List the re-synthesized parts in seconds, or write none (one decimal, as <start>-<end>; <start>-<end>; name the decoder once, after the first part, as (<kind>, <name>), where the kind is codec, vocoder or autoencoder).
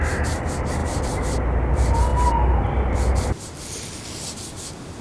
none